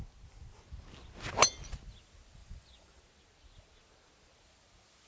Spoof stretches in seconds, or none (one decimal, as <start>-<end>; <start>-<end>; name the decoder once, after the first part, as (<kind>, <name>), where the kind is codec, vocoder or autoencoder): 2.4-3.0 (vocoder, Vocos)